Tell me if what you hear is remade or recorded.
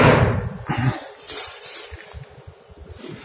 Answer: recorded